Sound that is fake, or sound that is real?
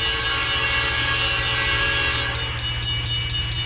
real